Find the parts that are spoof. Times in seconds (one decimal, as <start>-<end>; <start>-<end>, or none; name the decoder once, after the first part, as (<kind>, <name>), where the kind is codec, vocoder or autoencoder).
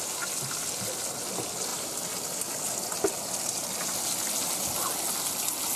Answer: 1.7-2.6 (vocoder, BigVGAN v2)